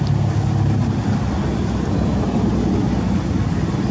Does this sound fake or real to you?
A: real